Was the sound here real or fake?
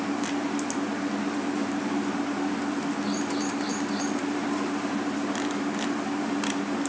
real